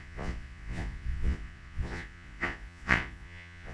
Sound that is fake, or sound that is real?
fake